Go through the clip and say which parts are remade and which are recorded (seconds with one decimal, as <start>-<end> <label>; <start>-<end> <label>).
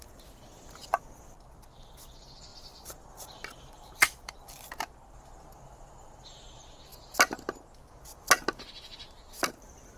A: 0.0-2.5 recorded; 2.5-4.7 remade; 4.7-10.0 recorded